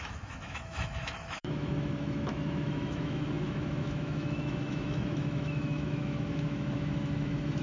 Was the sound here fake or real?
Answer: fake